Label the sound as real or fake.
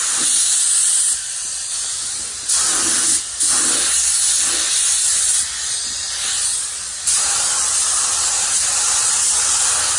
real